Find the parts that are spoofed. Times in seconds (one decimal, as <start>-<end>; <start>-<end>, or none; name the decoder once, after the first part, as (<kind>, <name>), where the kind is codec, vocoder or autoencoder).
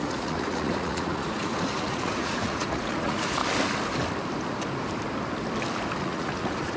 0.0-3.4 (vocoder, Vocos); 6.0-6.8